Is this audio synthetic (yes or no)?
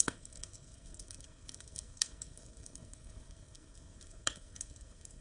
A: yes